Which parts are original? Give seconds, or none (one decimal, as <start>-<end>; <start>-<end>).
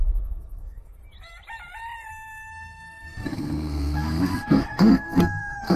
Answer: 1.0-2.1